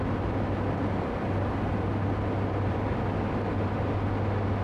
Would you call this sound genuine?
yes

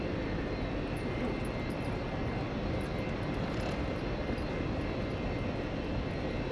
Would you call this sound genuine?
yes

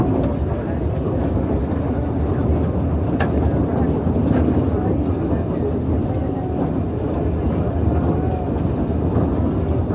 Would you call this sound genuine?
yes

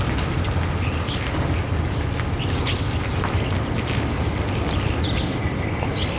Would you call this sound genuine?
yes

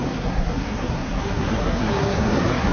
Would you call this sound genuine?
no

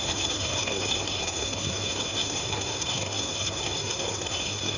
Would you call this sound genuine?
no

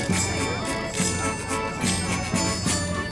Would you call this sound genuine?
yes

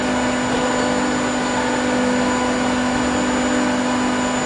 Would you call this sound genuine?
yes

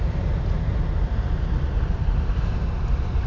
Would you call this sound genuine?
yes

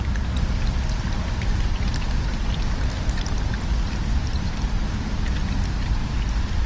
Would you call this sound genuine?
yes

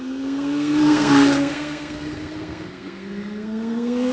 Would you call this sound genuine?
no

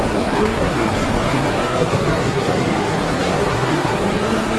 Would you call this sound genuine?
no